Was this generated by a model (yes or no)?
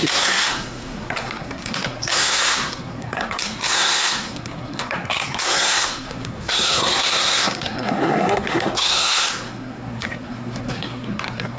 yes